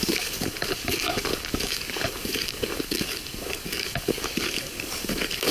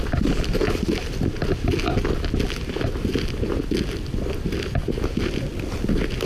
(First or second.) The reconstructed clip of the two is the first